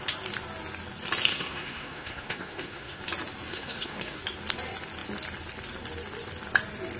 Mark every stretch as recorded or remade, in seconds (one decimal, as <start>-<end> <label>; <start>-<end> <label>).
0.0-1.3 recorded; 1.3-3.0 remade; 3.0-3.5 recorded; 3.5-4.2 remade; 4.2-7.0 recorded